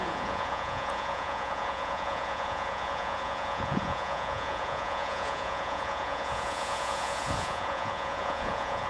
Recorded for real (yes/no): no